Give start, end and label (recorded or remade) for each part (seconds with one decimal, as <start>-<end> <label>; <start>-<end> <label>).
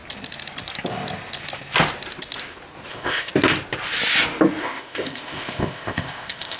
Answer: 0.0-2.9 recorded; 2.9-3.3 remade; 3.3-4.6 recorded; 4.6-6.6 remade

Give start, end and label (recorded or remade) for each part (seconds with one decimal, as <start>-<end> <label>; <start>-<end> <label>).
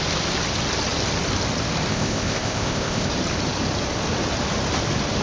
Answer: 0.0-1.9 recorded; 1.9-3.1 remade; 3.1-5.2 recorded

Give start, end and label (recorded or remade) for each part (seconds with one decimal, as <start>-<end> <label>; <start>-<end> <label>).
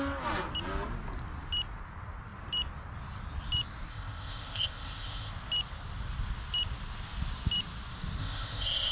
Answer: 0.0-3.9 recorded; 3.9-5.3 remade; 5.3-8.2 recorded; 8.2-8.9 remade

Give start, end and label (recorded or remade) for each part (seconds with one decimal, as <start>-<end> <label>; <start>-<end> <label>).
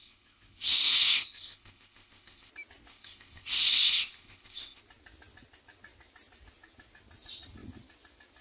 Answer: 0.0-2.5 remade; 2.5-2.9 recorded; 2.9-4.8 remade; 4.8-8.4 recorded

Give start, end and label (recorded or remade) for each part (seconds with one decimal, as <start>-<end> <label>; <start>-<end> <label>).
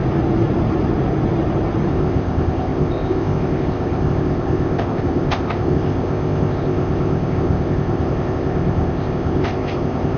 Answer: 0.0-1.9 recorded; 1.9-10.2 remade